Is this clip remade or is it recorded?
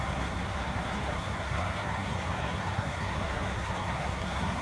remade